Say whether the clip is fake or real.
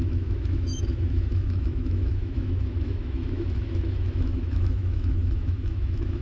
fake